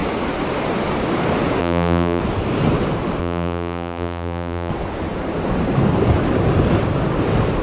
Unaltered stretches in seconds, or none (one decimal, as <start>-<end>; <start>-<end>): 0.0-1.6; 2.2-3.2; 4.7-7.6